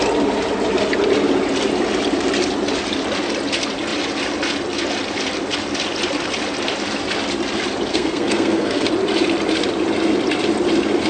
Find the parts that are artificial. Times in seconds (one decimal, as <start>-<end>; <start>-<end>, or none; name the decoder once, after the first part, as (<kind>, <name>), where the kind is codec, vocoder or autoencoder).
7.9-8.9 (codec, SNAC)